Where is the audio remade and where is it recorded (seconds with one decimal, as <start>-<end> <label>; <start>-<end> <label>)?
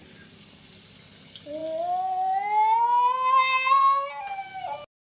0.0-5.0 recorded